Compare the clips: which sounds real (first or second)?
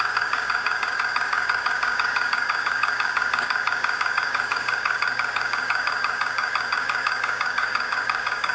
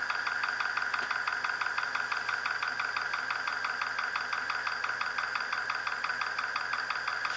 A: second